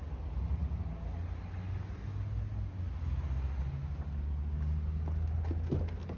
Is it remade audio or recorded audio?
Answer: recorded